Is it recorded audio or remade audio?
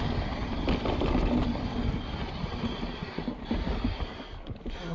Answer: recorded